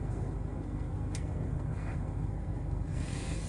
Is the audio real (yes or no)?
no